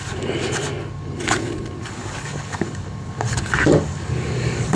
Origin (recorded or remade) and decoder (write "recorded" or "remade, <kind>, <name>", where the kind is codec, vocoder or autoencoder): remade, codec, DAC